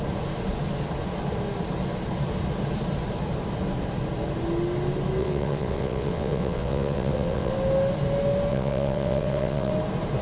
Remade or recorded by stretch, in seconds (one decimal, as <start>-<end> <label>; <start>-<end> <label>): 0.0-5.2 recorded; 5.2-7.5 remade; 7.5-8.5 recorded; 8.5-9.7 remade; 9.7-10.2 recorded